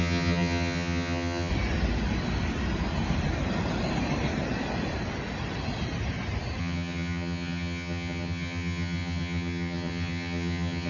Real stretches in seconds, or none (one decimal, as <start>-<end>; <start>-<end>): 1.5-6.6